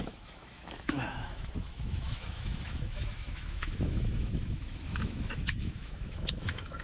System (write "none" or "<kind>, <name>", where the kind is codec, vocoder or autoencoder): autoencoder, DAC-VAE